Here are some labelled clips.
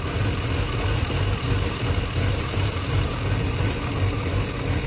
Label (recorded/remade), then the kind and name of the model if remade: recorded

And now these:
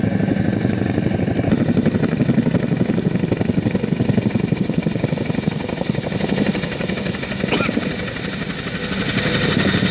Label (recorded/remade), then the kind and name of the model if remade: remade, vocoder, BigVGAN v2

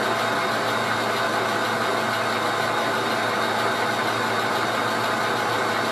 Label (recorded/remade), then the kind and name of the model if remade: recorded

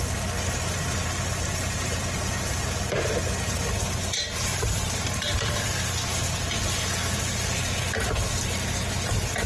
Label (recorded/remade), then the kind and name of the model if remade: recorded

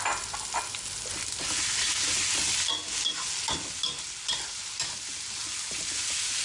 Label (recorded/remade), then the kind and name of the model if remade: recorded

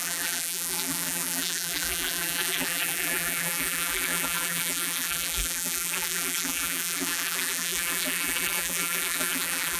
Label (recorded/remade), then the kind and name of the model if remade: remade, vocoder, BigVGAN v2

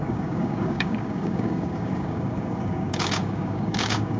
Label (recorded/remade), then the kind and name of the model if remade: remade, codec, DAC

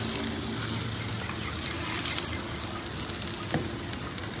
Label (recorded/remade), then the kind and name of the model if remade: recorded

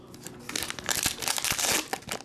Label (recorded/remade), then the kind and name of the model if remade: recorded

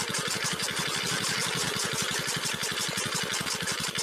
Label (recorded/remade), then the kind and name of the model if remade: recorded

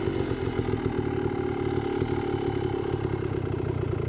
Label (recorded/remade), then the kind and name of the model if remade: recorded